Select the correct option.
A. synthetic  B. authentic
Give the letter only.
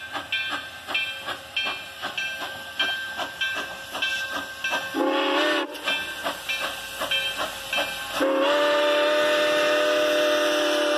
B